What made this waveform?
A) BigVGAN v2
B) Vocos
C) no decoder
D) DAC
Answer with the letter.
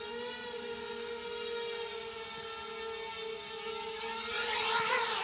C